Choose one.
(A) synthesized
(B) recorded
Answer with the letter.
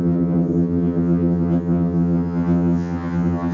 A